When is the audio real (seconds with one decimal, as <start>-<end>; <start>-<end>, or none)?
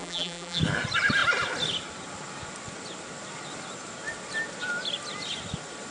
0.6-5.9